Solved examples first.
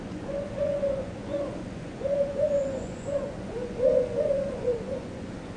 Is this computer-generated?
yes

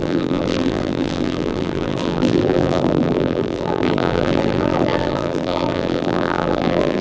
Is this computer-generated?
yes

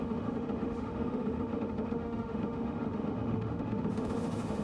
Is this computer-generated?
yes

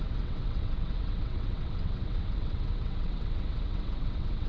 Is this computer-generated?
yes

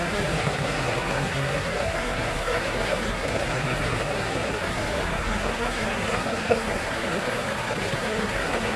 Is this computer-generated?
yes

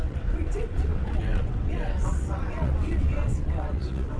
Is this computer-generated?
yes